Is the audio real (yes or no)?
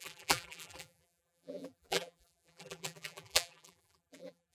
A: no